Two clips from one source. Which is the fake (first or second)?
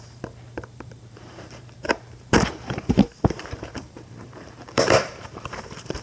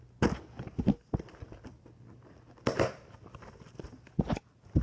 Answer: first